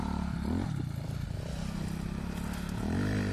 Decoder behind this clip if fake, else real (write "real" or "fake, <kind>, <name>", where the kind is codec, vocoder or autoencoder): real